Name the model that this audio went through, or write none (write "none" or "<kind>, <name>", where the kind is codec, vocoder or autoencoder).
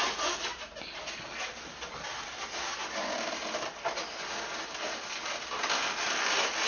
none